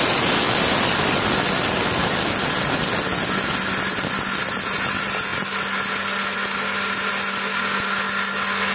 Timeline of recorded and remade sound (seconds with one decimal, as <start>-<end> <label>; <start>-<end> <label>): 0.0-8.7 recorded